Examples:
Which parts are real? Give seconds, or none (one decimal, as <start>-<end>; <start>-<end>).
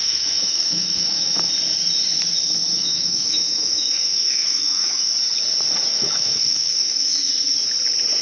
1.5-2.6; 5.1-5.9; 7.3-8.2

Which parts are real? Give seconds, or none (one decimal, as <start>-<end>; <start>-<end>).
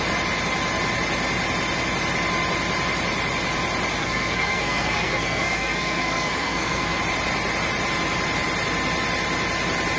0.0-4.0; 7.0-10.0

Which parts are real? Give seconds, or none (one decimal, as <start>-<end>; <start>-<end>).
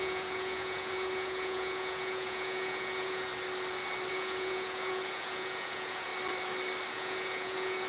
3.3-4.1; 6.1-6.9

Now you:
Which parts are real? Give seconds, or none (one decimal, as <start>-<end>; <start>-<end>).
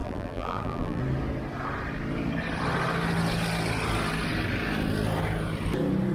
1.0-6.1